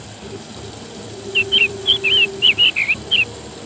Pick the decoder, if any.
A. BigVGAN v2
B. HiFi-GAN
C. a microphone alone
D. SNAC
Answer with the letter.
A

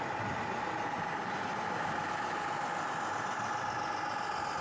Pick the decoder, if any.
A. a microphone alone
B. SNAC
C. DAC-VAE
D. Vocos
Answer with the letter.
A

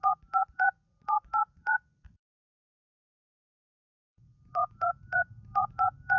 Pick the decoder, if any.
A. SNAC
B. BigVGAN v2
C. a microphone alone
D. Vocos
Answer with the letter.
D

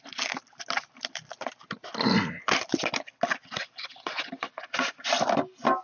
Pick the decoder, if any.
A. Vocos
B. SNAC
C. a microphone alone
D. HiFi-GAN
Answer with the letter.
C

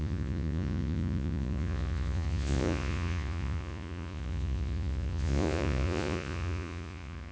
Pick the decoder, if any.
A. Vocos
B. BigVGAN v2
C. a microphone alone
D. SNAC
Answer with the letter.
A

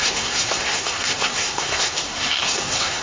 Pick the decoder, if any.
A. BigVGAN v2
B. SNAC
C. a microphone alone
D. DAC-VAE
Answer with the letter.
B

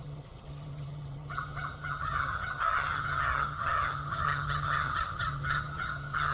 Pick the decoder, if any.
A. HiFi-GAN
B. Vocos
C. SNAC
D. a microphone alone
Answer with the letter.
A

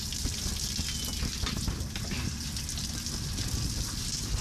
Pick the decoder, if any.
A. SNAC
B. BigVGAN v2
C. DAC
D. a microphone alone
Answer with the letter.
D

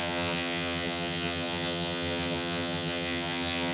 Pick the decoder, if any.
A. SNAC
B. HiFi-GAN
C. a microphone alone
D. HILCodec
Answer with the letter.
B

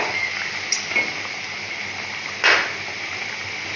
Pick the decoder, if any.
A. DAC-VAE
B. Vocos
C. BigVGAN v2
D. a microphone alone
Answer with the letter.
D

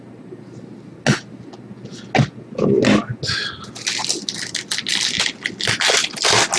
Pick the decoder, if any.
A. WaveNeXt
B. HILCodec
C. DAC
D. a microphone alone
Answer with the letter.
D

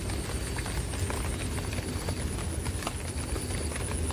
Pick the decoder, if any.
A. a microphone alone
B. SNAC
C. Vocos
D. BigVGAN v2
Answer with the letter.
A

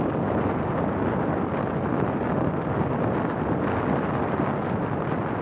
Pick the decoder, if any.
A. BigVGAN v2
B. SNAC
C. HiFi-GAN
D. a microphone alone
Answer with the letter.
D